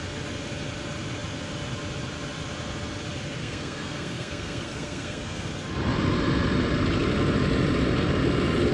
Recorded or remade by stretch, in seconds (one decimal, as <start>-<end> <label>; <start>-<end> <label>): 0.0-3.4 recorded; 3.4-5.5 remade; 5.5-8.7 recorded

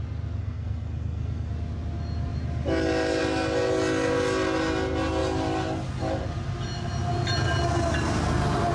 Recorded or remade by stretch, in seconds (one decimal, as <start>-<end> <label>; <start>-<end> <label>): 0.0-0.4 recorded; 0.4-1.5 remade; 1.5-8.7 recorded

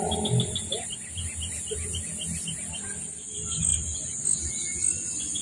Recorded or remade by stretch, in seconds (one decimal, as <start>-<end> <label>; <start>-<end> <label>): 0.0-5.4 recorded

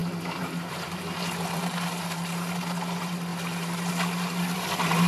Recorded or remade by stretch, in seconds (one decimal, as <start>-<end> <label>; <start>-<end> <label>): 0.0-2.0 remade; 2.0-5.1 recorded

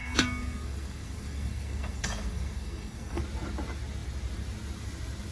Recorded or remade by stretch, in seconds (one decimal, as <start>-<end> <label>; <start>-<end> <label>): 0.0-3.2 remade; 3.2-5.3 recorded

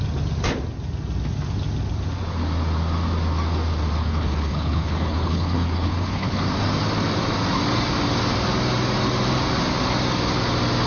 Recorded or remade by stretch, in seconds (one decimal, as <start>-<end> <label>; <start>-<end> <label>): 0.0-4.0 recorded; 4.0-6.4 remade; 6.4-10.9 recorded

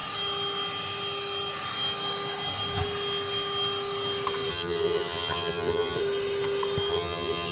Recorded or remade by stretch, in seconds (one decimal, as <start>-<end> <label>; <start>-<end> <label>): 0.0-4.5 recorded; 4.5-6.0 remade; 6.0-6.9 recorded; 6.9-7.5 remade

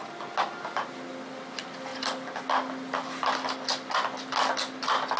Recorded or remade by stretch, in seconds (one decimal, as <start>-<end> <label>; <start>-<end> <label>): 0.0-5.2 recorded